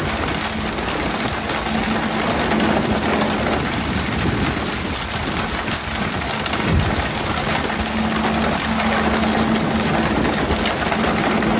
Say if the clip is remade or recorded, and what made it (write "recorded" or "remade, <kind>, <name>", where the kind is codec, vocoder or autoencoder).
recorded